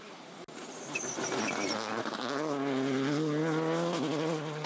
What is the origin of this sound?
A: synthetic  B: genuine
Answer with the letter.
B